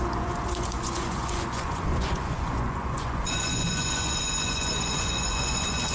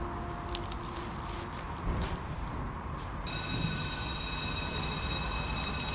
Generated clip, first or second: first